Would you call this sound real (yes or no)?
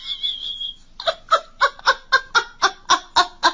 yes